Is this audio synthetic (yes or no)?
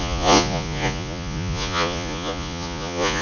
yes